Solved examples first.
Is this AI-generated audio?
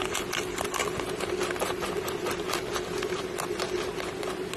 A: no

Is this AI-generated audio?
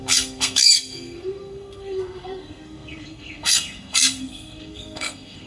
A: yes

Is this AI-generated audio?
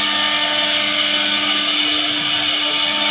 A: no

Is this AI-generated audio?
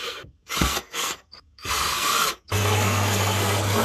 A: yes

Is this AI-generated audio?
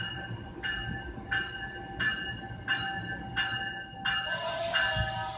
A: no